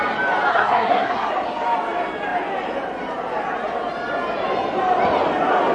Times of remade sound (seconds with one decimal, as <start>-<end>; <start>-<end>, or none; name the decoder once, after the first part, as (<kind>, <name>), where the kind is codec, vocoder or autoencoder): 0.5-1.3 (codec, SNAC)